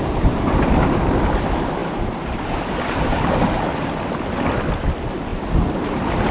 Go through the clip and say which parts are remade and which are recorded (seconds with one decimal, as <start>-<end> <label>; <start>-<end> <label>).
0.0-1.8 recorded; 1.8-3.6 remade; 3.6-6.3 recorded